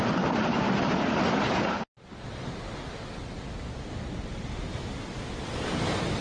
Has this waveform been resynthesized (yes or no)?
no